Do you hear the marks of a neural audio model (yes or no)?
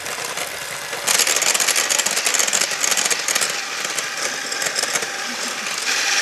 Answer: no